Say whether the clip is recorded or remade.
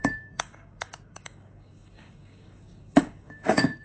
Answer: remade